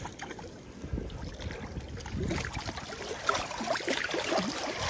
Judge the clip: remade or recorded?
recorded